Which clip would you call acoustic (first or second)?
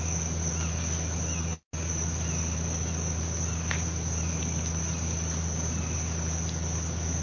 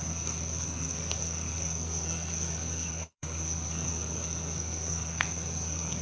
first